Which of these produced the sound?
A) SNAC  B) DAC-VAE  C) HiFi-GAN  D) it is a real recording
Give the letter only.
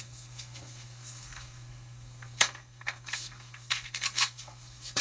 A